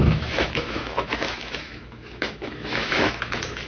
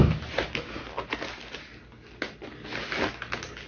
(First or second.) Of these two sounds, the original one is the second